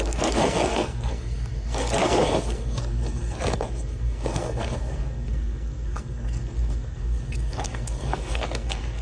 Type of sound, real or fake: fake